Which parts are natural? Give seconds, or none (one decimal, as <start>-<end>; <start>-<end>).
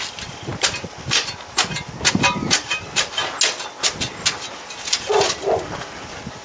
0.5-2.1; 3.2-4.4